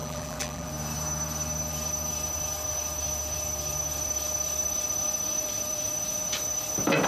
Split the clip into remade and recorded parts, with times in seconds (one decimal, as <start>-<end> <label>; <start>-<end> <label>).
0.0-0.7 remade; 0.7-7.1 recorded